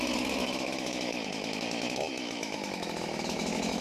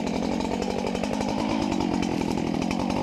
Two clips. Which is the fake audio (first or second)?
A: first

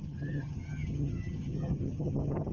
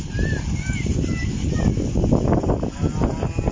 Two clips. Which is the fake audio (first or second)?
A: first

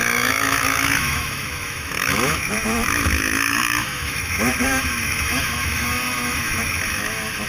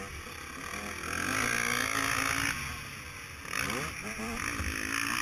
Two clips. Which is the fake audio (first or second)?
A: first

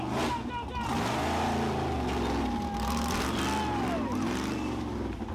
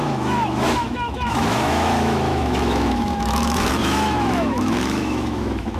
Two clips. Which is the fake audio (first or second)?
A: second